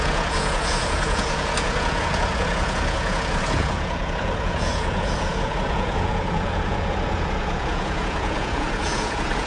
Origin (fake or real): fake